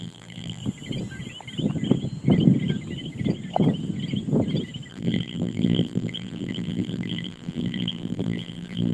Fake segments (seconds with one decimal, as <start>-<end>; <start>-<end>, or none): 0.0-0.6; 4.9-8.9